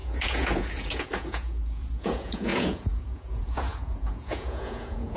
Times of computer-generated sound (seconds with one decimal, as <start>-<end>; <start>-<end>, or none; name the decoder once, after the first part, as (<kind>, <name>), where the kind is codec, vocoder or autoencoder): 0.0-5.2 (vocoder, Vocos)

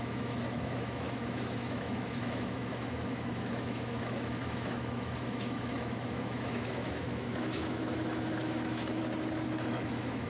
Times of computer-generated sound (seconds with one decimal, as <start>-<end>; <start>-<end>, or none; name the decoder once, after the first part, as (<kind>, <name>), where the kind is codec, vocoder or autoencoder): 0.0-9.0 (autoencoder, DAC-VAE); 9.5-10.3

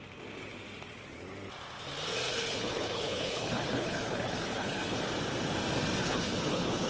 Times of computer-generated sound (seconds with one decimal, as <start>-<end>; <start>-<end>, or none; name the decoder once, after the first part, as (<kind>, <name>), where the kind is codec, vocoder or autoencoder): 2.3-5.0 (codec, HILCodec); 6.0-6.9